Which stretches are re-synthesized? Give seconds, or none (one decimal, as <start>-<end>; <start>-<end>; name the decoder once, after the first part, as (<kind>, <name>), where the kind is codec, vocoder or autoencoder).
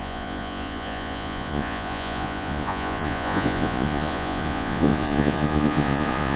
0.0-6.4 (vocoder, Vocos)